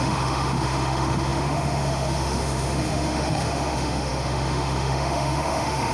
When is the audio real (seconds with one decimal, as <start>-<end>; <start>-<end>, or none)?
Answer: none